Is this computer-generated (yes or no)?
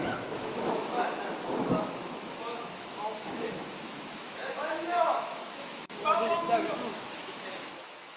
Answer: yes